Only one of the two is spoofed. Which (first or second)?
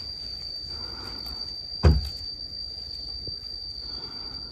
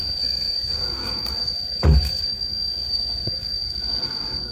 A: second